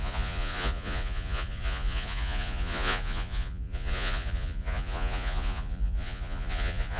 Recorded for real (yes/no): no